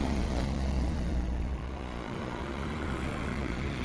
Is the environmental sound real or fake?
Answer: fake